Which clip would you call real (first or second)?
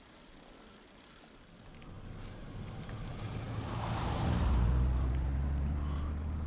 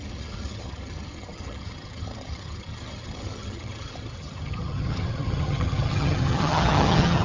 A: first